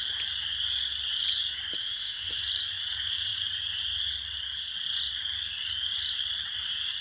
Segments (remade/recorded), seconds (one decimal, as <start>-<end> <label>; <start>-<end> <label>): 0.0-1.8 recorded; 1.8-2.4 remade; 2.4-7.0 recorded